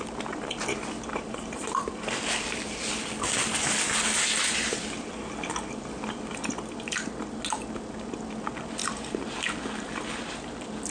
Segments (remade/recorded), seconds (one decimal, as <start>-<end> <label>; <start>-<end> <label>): 0.0-10.9 recorded